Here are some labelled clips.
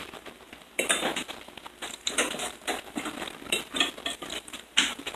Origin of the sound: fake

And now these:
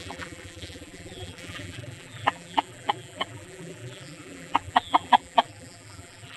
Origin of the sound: fake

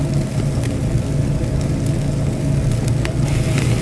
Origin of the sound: real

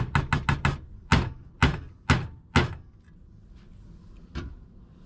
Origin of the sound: real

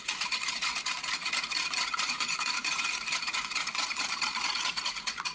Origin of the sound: fake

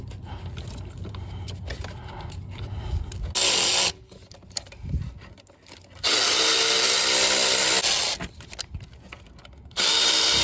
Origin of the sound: real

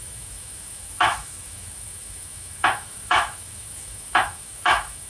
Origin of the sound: fake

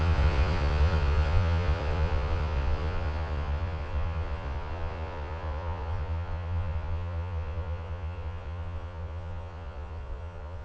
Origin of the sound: fake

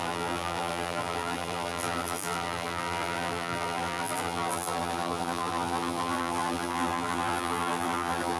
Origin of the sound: fake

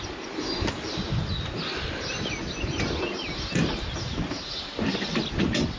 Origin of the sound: real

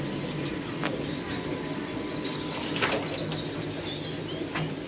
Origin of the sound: real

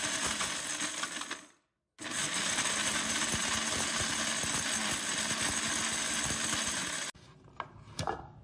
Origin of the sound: real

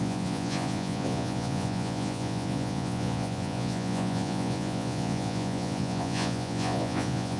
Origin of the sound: fake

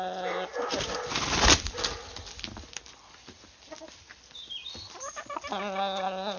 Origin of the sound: real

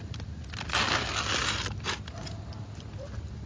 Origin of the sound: real